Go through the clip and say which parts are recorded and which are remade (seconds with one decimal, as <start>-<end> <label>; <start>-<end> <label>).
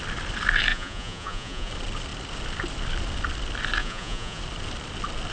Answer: 0.0-0.7 recorded; 0.7-1.7 remade; 1.7-3.8 recorded; 3.8-4.4 remade; 4.4-5.3 recorded